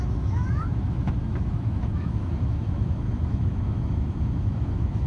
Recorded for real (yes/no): no